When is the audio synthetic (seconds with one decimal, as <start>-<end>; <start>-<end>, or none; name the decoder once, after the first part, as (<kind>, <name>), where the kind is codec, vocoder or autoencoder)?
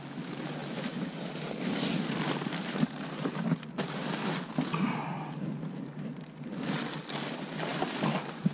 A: 0.6-3.3 (vocoder, BigVGAN v2)